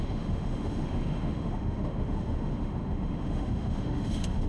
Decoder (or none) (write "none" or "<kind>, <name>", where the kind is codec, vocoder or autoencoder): autoencoder, DAC-VAE